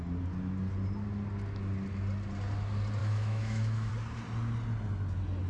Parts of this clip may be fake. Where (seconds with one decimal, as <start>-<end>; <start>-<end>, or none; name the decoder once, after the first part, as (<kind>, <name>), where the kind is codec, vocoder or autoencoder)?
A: 3.0-3.9 (autoencoder, DAC-VAE)